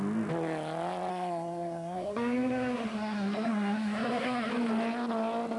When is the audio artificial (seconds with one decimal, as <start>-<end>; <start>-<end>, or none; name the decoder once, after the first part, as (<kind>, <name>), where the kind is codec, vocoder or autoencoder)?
1.1-4.5 (codec, SNAC)